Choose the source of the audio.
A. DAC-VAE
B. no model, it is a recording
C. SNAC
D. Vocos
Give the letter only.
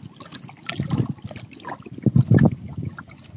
B